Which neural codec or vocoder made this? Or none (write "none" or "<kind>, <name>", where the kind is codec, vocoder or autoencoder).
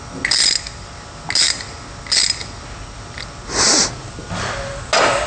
none